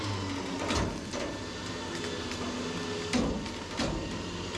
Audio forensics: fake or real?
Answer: real